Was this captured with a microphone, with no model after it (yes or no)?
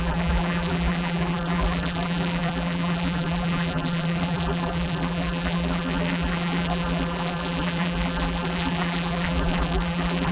no